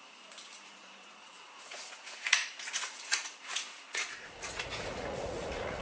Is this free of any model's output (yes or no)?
no